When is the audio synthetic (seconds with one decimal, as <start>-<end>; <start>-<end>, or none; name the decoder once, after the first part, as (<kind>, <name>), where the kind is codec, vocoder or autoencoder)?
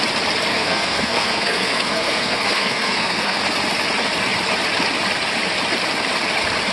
0.5-3.4 (codec, SNAC)